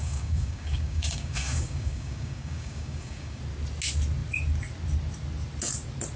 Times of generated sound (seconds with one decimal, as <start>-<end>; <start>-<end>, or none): 0.0-3.4